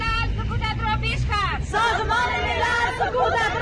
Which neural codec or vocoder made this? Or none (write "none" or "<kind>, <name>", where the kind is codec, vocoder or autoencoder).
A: vocoder, BigVGAN v2